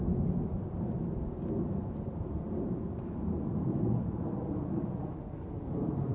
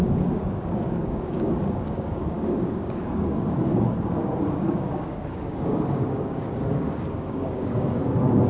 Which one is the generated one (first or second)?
second